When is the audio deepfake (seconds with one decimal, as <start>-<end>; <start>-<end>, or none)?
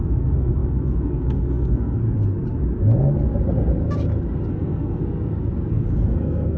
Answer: 0.0-2.0; 4.5-5.0; 5.7-6.6